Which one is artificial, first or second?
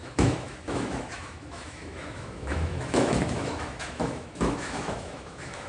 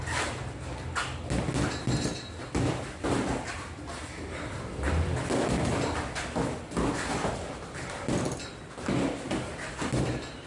first